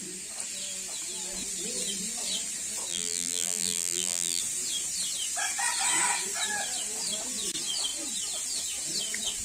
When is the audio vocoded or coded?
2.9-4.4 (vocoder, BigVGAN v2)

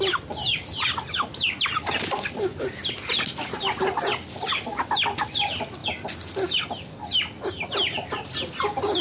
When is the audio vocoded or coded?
none

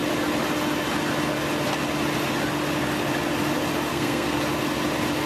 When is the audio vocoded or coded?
3.9-4.4 (codec, SNAC)

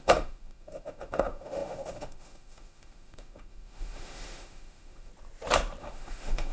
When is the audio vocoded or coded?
0.0-5.1 (autoencoder, DAC-VAE); 5.8-6.5

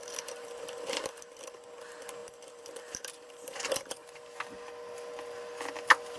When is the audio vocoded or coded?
0.0-1.7 (vocoder, BigVGAN v2); 2.2-3.5

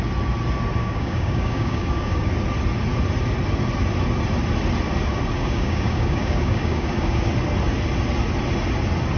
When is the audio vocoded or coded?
0.8-2.3 (codec, DAC); 5.3-7.3

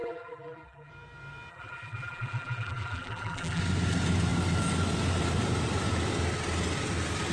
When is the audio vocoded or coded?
0.0-0.9 (vocoder, BigVGAN v2); 1.5-3.6

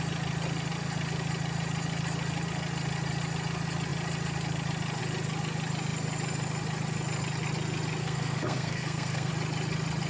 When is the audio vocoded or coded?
8.0-9.3 (codec, SNAC)